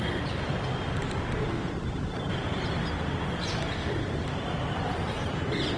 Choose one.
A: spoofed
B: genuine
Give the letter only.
B